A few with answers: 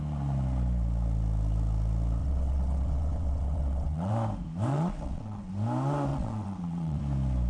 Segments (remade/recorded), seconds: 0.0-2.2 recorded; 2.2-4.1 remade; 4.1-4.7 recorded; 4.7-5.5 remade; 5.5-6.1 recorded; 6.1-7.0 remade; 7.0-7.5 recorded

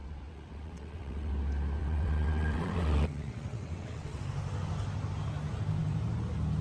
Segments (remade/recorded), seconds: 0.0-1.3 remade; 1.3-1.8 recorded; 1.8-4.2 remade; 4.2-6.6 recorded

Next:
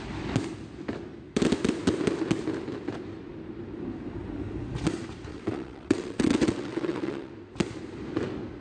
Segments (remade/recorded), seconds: 0.0-5.3 recorded; 5.3-7.3 remade; 7.3-8.6 recorded